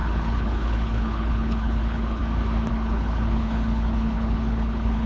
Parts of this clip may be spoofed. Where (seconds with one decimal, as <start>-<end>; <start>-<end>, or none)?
0.0-2.2; 2.7-5.1